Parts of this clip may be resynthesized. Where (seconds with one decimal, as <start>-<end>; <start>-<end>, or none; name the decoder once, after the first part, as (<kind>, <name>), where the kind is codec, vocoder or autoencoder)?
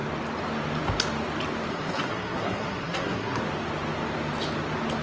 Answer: 1.7-3.4 (codec, SNAC)